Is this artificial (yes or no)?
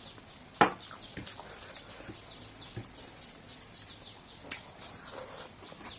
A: no